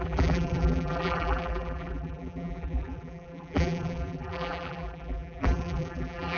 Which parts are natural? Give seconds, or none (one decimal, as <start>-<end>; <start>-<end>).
none